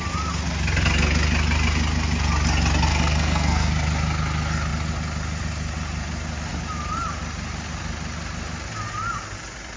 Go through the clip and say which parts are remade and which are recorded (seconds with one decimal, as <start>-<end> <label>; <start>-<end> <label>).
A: 0.0-2.9 recorded; 2.9-3.7 remade; 3.7-9.8 recorded